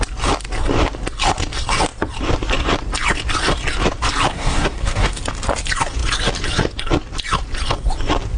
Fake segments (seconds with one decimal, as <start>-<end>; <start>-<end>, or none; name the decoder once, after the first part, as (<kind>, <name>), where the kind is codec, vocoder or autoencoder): 4.3-5.2 (codec, SNAC)